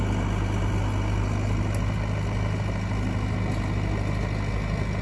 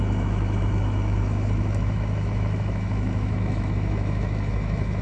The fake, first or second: second